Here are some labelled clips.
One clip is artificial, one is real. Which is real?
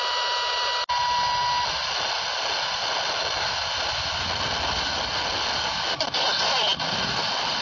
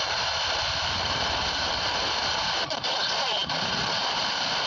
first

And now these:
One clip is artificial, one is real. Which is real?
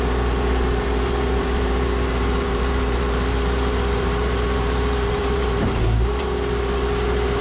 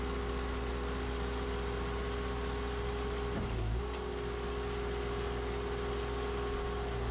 second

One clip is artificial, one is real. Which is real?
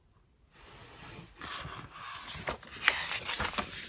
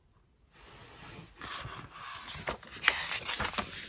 second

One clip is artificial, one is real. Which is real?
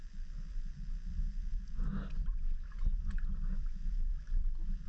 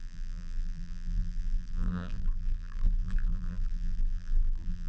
first